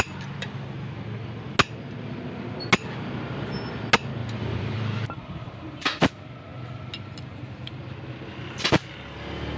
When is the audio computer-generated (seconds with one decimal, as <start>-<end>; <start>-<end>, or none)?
4.2-6.1